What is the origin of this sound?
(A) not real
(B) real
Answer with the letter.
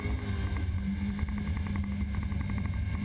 B